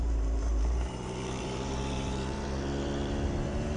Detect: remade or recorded remade